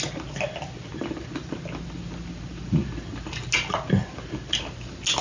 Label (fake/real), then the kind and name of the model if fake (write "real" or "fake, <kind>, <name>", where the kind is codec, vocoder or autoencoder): real